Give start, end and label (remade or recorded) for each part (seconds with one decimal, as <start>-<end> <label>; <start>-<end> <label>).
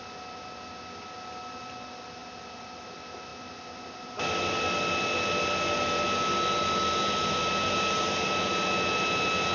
0.0-9.5 recorded